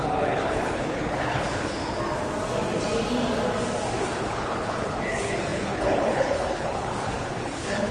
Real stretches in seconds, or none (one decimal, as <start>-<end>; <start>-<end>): 1.8-4.0